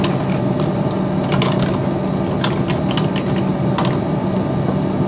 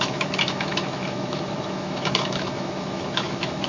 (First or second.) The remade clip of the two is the second